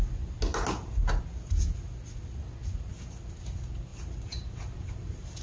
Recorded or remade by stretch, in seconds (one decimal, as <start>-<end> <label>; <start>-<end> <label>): 0.0-3.9 recorded; 3.9-5.4 remade